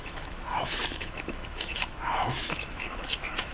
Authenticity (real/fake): fake